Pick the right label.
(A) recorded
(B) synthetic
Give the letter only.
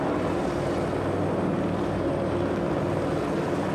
A